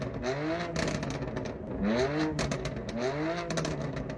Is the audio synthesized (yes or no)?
no